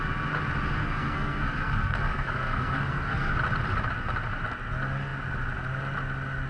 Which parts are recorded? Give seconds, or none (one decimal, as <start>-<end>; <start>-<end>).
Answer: 0.0-0.8; 3.3-6.5